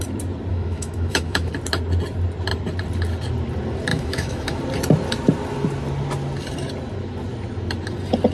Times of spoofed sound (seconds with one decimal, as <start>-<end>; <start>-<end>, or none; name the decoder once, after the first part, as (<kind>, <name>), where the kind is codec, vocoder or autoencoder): 0.5-1.5 (autoencoder, DAC-VAE); 3.9-4.6